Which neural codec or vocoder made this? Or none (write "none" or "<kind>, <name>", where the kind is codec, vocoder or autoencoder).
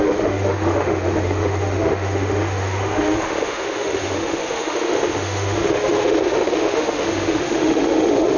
autoencoder, DAC-VAE